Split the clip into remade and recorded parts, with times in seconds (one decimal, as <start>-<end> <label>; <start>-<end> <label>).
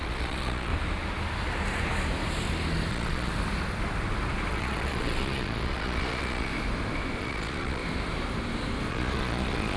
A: 0.0-0.7 remade; 0.7-2.9 recorded; 2.9-3.3 remade; 3.3-4.5 recorded; 4.5-6.5 remade; 6.5-7.2 recorded; 7.2-7.8 remade; 7.8-8.9 recorded; 8.9-9.8 remade